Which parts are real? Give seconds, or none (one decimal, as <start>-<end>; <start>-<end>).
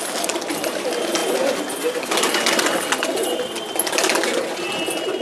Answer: 0.0-5.2